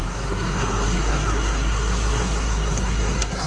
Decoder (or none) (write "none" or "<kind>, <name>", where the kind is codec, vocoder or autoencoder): codec, SNAC